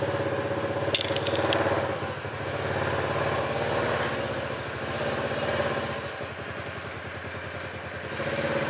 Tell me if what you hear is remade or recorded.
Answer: recorded